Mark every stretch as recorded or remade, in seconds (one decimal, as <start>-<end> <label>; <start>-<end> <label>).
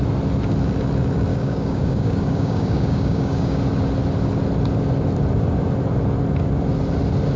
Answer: 0.0-1.3 recorded; 1.3-3.6 remade; 3.6-7.4 recorded